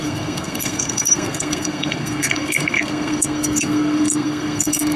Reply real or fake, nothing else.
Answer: fake